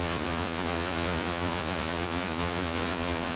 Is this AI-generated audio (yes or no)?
yes